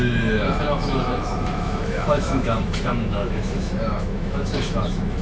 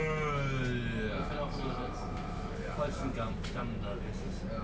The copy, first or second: first